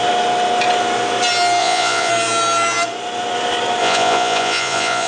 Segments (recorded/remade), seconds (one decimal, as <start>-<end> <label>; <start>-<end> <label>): 0.0-1.6 recorded; 1.6-2.1 remade; 2.1-3.8 recorded; 3.8-5.1 remade